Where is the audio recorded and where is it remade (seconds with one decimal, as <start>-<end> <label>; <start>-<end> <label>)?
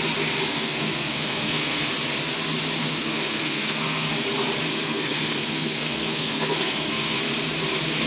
0.0-0.5 recorded; 0.5-1.9 remade; 1.9-2.8 recorded; 2.8-4.1 remade; 4.1-4.7 recorded; 4.7-7.2 remade; 7.2-8.1 recorded